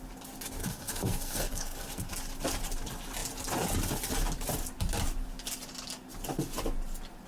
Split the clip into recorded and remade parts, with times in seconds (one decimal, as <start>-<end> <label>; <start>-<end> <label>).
0.0-0.6 recorded; 0.6-2.1 remade; 2.1-7.3 recorded